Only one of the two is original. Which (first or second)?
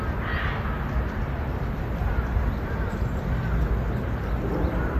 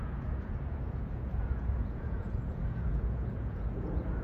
first